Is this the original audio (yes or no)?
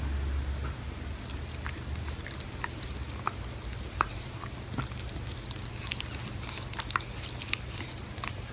yes